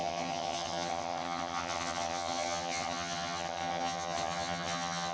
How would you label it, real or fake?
fake